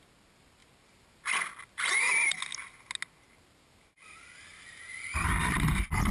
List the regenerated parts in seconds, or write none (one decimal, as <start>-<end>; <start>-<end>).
none